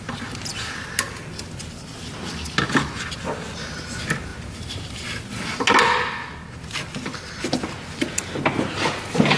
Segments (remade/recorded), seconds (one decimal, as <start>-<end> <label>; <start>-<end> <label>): 0.0-9.4 recorded